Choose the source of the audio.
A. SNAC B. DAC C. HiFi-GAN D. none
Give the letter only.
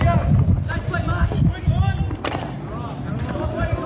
D